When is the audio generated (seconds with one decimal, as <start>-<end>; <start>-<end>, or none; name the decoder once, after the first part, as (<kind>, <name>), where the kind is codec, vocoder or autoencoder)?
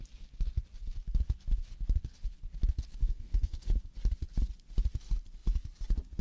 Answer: 3.0-3.7 (codec, SNAC)